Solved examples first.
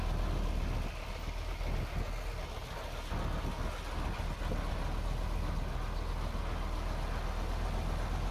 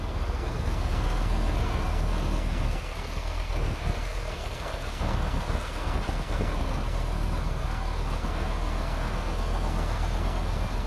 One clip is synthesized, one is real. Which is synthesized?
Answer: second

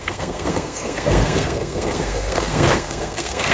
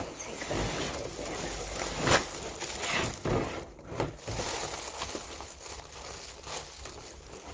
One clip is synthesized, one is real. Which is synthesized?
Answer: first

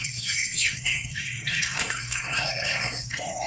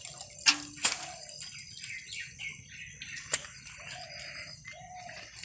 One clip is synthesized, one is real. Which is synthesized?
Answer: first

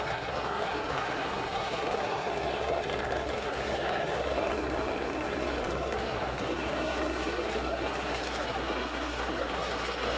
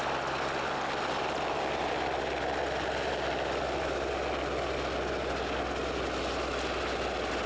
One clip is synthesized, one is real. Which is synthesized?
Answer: first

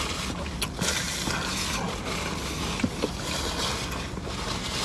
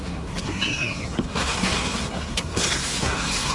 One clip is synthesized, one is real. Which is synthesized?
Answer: second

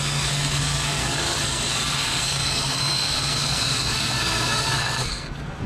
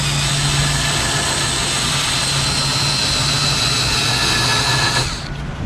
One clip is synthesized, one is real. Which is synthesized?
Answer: first